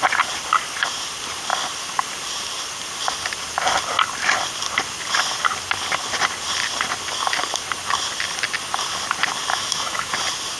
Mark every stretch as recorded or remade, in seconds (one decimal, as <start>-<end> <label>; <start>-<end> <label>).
0.0-9.5 recorded; 9.5-10.1 remade; 10.1-10.6 recorded